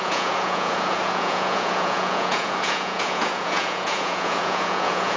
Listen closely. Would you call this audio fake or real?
fake